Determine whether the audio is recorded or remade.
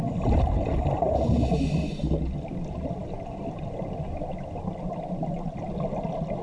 recorded